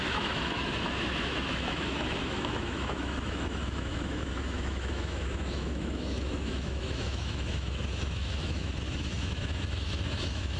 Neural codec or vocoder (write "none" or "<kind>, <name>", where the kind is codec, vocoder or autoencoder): autoencoder, DAC-VAE